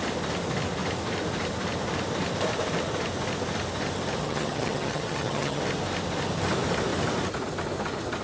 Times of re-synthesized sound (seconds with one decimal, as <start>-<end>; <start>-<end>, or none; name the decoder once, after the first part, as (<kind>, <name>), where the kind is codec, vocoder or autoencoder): 4.2-5.6 (vocoder, HiFi-GAN)